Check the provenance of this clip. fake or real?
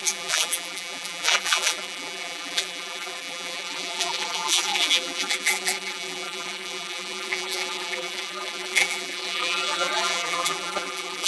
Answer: fake